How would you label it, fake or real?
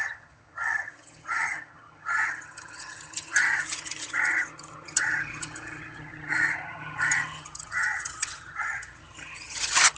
fake